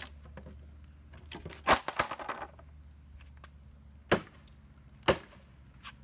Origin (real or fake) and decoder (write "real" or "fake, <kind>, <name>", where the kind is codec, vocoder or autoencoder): real